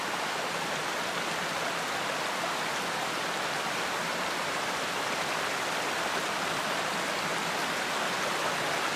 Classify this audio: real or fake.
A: real